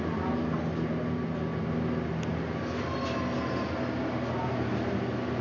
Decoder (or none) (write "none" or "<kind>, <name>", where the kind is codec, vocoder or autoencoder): none